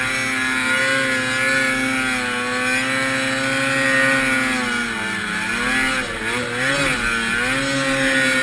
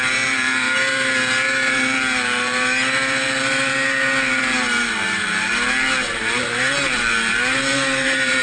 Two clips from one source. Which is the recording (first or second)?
first